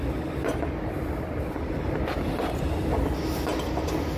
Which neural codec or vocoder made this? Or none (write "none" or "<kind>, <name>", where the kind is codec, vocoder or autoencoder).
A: none